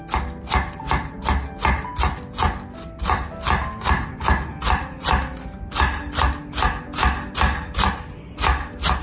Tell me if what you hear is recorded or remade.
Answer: recorded